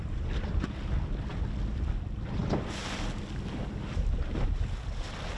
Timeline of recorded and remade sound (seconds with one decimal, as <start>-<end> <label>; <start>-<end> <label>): 0.0-5.4 recorded